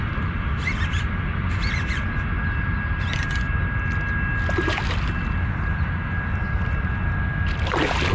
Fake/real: real